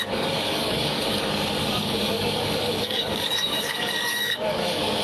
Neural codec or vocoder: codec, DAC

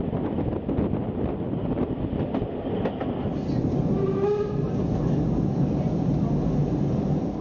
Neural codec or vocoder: none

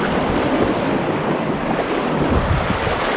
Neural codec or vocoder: none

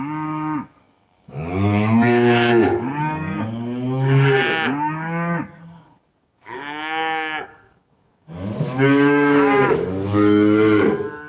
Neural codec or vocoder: codec, DAC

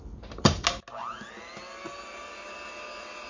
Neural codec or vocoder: none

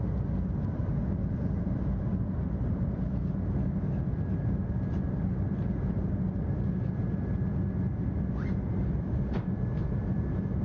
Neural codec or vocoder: none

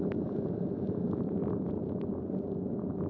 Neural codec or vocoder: none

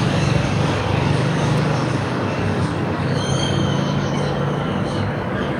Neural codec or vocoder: codec, DAC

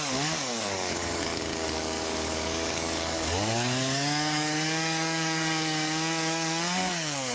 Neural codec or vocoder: codec, DAC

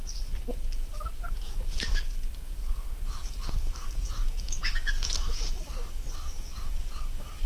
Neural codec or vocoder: codec, DAC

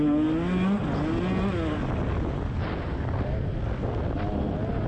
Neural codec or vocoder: none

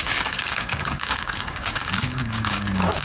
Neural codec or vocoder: codec, DAC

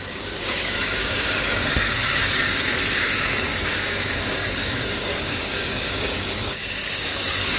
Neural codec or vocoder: codec, DAC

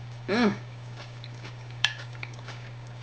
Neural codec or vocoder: codec, DAC